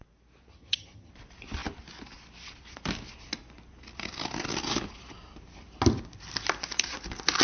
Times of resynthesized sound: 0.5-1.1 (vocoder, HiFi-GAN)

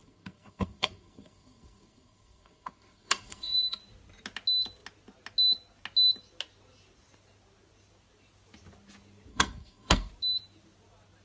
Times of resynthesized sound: 0.0-3.8 (codec, SNAC); 9.3-10.1

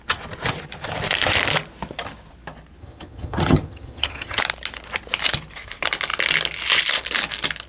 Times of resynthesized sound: 2.8-4.4 (vocoder, HiFi-GAN)

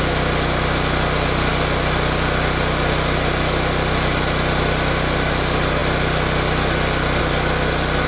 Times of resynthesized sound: none